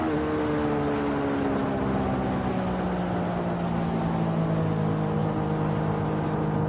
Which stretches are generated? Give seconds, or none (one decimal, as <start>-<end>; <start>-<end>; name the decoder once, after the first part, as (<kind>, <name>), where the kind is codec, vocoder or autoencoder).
none